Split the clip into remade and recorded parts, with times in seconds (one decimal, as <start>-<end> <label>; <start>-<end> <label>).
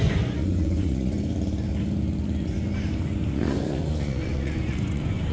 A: 0.0-1.3 remade; 1.3-3.3 recorded; 3.3-5.3 remade